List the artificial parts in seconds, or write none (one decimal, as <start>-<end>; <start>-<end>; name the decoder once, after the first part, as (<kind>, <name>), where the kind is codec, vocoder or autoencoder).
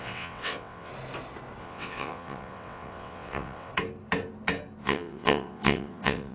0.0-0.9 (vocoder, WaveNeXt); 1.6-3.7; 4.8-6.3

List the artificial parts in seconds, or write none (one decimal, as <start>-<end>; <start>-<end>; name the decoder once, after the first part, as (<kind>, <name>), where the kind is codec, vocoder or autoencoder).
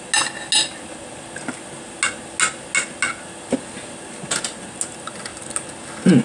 none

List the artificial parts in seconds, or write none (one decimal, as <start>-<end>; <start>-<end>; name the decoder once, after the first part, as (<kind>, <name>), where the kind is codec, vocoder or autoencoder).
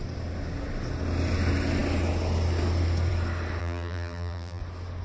3.6-4.6 (vocoder, BigVGAN v2)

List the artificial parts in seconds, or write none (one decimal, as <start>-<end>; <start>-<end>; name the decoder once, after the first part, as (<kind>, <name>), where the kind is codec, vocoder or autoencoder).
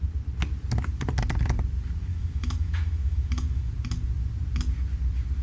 2.1-3.7 (autoencoder, DAC-VAE)